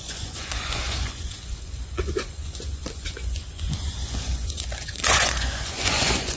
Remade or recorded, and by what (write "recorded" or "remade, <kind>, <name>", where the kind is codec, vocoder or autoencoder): remade, vocoder, Vocos